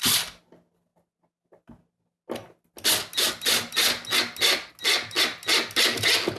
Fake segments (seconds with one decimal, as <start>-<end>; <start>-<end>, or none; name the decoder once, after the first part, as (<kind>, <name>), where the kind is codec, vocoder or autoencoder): none

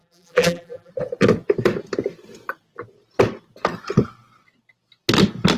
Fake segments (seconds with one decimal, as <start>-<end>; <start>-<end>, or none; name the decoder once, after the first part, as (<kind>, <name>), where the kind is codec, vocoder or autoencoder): 0.0-0.9 (vocoder, BigVGAN v2)

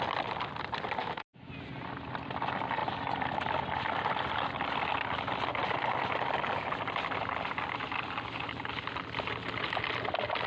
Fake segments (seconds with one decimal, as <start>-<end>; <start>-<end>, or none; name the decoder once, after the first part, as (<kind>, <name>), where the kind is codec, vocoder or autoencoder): 1.0-1.5 (autoencoder, DAC-VAE)

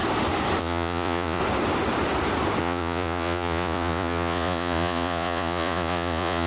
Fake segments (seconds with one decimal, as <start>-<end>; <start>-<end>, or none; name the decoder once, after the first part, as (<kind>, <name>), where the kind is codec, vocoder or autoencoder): 0.6-1.4 (vocoder, Vocos); 2.6-6.5

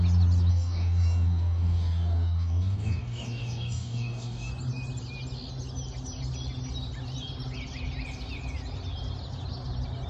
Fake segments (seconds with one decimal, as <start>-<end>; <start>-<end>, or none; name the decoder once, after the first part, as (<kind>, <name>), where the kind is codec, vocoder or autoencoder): 0.5-4.5 (codec, DAC)

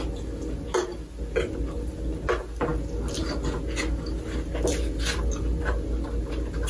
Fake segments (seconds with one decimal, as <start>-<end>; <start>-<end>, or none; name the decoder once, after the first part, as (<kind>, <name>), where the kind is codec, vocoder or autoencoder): none

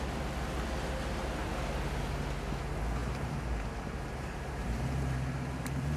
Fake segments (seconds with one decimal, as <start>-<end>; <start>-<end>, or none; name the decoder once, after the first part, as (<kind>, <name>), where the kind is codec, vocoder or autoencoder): 3.0-6.0 (vocoder, BigVGAN v2)

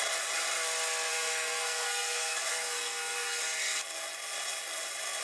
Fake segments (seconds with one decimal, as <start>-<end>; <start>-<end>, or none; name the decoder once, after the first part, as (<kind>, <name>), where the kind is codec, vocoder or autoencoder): 1.1-3.4 (codec, SNAC)